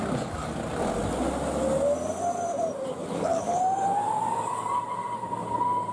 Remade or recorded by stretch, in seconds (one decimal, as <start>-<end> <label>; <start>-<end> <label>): 0.0-3.0 recorded; 3.0-3.6 remade; 3.6-5.9 recorded